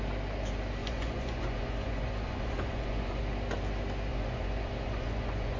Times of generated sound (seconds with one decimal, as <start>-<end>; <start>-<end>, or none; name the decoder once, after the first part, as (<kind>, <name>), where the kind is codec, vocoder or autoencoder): 0.8-3.2 (vocoder, Vocos); 4.1-5.6